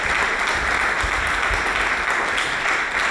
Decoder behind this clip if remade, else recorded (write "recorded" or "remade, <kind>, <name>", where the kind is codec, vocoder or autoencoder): recorded